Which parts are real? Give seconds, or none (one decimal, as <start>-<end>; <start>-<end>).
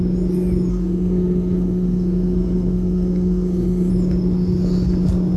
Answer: 0.0-0.7; 3.9-5.4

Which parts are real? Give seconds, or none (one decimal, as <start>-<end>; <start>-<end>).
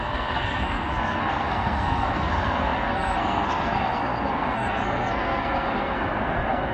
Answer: none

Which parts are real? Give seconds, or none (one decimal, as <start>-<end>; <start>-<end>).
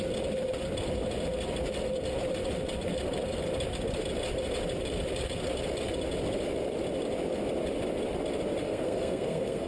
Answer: 0.0-8.6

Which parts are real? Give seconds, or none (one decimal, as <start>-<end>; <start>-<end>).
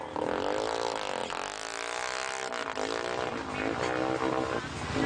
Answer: 0.0-5.1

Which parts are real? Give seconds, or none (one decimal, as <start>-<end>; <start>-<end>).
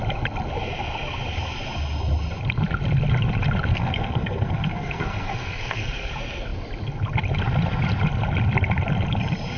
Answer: 0.0-3.7; 6.1-9.6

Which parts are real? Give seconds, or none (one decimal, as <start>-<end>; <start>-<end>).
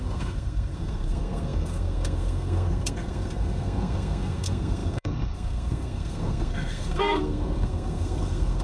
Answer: none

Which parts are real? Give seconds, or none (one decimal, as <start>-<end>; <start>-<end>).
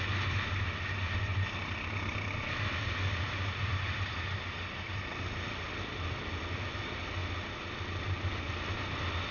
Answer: 0.0-9.3